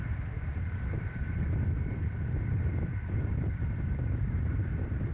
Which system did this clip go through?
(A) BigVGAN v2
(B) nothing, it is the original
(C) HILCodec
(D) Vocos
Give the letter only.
A